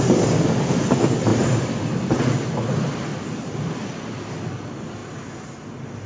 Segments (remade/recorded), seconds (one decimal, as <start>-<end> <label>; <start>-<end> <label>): 0.0-1.3 recorded; 1.3-2.2 remade; 2.2-3.1 recorded; 3.1-4.1 remade; 4.1-6.1 recorded